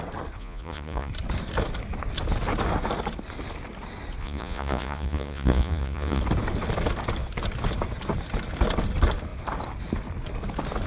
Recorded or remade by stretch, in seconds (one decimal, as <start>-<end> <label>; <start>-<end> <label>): 0.0-0.4 recorded; 0.4-1.1 remade; 1.1-4.2 recorded; 4.2-6.2 remade; 6.2-10.9 recorded